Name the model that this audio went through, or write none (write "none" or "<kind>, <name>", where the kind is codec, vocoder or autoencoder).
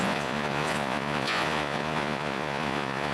vocoder, Vocos